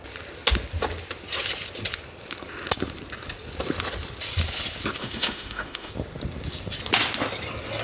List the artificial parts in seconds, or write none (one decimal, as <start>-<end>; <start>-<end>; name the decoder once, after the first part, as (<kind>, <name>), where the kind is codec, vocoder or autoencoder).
5.0-5.9 (autoencoder, DAC-VAE)